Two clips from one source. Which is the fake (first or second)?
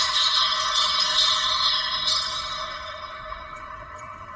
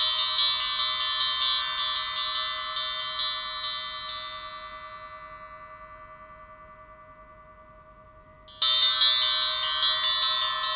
first